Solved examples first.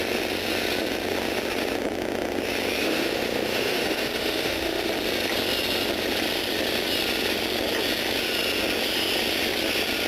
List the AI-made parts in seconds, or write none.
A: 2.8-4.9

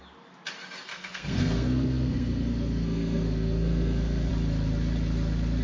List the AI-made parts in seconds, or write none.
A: 0.9-4.3

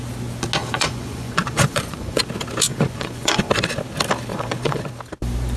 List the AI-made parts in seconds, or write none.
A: 0.6-2.2; 2.7-3.5; 4.3-4.9

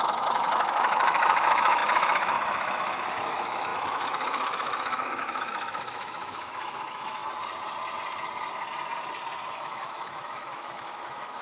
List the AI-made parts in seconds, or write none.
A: 0.0-7.2; 9.5-11.4